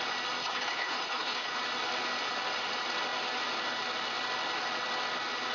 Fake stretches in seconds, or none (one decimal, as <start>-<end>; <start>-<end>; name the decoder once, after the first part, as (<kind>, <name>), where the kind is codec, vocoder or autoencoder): 0.4-1.6 (codec, HILCodec)